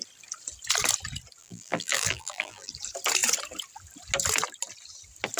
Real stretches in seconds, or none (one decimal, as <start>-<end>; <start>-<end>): 0.0-1.4; 2.7-5.4